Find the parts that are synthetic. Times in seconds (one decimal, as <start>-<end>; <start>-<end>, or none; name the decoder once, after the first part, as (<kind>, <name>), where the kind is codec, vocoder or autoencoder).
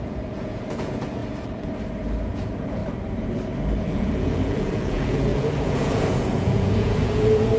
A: 0.0-1.2 (vocoder, Vocos); 2.3-2.8; 3.8-7.6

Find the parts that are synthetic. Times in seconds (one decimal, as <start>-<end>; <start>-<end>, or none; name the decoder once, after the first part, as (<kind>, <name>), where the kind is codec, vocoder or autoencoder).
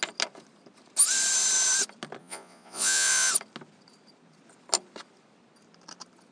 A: 2.2-3.3 (vocoder, Vocos)